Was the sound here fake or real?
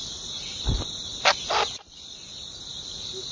real